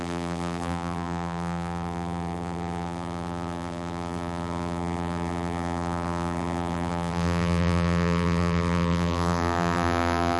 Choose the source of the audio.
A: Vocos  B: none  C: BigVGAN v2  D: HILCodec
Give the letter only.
C